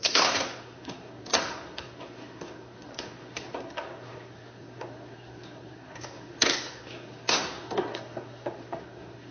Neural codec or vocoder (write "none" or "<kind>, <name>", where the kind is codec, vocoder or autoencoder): codec, SNAC